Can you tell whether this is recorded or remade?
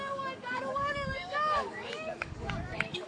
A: remade